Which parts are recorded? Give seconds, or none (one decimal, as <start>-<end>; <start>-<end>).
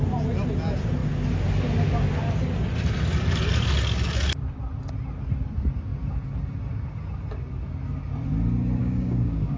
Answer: 0.0-8.8